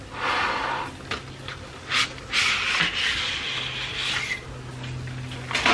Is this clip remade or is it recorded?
recorded